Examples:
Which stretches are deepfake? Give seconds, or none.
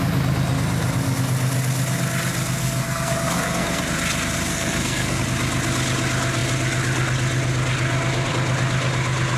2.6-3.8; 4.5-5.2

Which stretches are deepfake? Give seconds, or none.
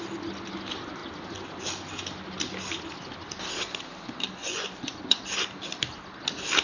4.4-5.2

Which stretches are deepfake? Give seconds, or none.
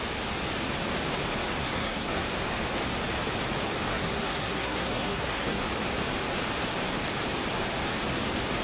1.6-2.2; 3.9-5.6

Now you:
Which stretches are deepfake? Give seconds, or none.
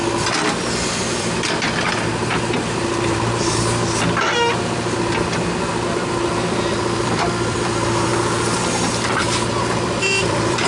0.7-2.1; 6.7-8.1; 9.2-10.7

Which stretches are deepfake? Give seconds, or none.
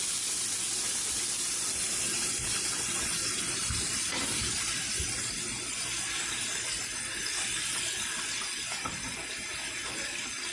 3.6-4.6; 7.2-8.8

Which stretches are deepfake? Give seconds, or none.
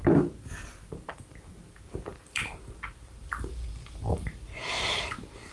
0.0-1.1; 2.1-5.5